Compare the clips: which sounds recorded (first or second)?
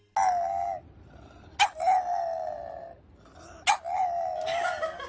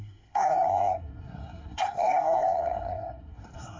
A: first